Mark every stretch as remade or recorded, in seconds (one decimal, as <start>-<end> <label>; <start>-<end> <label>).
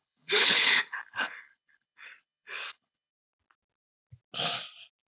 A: 0.0-3.1 remade; 3.1-5.2 recorded